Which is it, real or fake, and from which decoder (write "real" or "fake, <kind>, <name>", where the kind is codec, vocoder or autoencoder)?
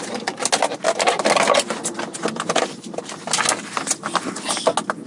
real